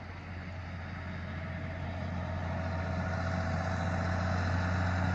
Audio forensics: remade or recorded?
recorded